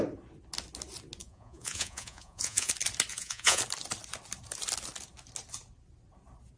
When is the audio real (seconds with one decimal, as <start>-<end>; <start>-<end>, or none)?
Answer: 0.0-1.2; 2.7-3.1; 3.6-6.6